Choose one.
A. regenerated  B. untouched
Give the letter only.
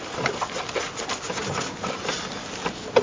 B